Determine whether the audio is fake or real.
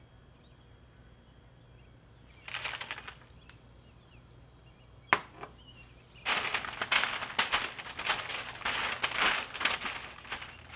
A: real